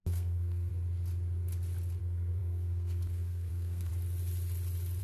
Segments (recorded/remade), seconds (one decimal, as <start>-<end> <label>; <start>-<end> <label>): 0.0-0.7 remade; 0.7-2.0 recorded; 2.0-3.9 remade; 3.9-5.0 recorded